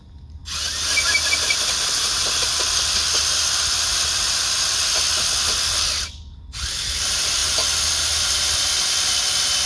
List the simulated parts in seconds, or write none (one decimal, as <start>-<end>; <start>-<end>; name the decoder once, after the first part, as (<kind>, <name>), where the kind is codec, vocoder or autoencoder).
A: none